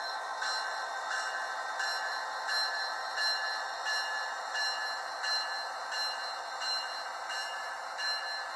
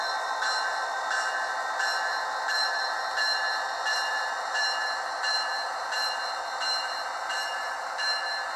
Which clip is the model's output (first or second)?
second